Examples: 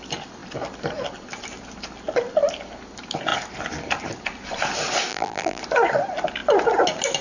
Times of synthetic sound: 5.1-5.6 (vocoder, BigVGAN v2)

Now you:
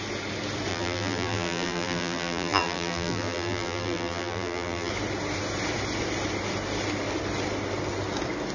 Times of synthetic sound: 0.7-4.9 (vocoder, BigVGAN v2)

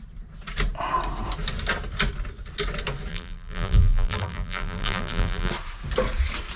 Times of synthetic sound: 3.1-5.5 (vocoder, BigVGAN v2)

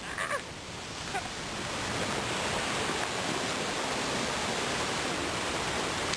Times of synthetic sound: 0.0-5.2 (vocoder, BigVGAN v2)

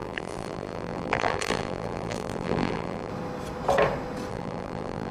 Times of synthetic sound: 0.0-3.1 (vocoder, BigVGAN v2); 4.3-5.1

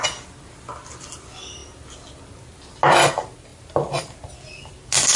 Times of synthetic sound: 3.5-4.3 (vocoder, BigVGAN v2)

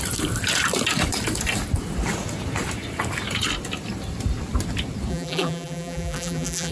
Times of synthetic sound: 5.1-6.7 (vocoder, BigVGAN v2)